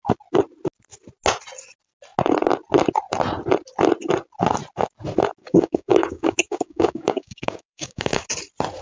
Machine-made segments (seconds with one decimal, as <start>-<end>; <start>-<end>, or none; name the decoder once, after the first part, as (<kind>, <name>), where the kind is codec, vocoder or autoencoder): 5.4-8.3 (codec, DAC)